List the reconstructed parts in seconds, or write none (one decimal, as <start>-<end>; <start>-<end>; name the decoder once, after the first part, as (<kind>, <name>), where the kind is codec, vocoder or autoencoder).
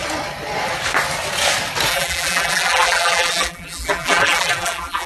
1.9-5.1 (vocoder, BigVGAN v2)